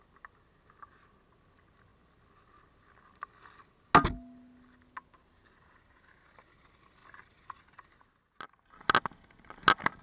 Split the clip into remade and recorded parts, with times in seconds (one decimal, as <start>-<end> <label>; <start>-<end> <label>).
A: 0.0-10.0 recorded